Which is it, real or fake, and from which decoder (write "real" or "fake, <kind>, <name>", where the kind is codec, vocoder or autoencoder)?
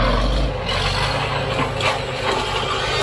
real